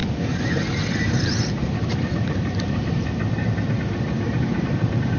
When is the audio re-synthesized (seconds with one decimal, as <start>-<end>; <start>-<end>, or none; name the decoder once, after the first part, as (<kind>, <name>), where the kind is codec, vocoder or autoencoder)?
0.0-5.2 (vocoder, BigVGAN v2)